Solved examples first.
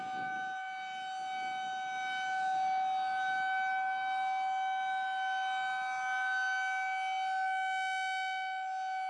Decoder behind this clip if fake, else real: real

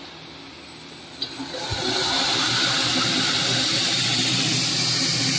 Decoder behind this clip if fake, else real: real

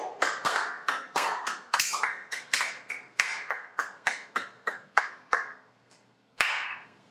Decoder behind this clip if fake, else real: fake, codec, SNAC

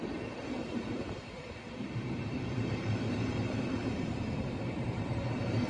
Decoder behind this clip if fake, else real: fake, vocoder, BigVGAN v2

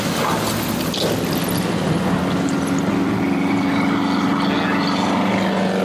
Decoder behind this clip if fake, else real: real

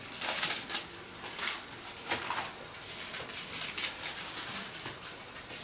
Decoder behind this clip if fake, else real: real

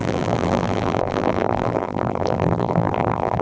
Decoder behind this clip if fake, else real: fake, vocoder, BigVGAN v2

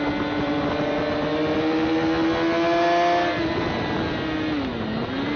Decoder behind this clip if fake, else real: real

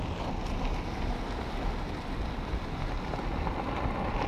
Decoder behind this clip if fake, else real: real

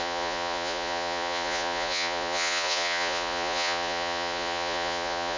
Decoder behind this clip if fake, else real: fake, vocoder, Vocos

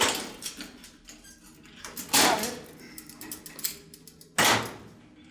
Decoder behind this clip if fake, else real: real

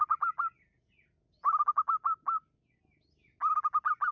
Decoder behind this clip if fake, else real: real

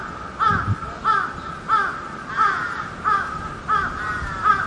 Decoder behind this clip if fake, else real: real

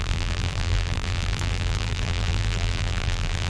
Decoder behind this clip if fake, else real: fake, vocoder, BigVGAN v2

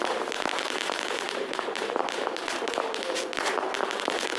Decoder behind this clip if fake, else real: fake, vocoder, BigVGAN v2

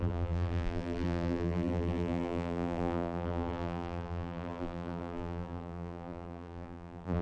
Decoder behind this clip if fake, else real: fake, vocoder, BigVGAN v2